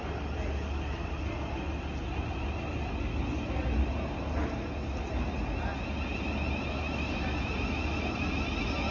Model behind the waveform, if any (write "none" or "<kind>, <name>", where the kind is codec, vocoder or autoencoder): none